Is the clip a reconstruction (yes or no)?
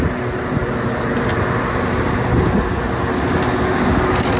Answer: no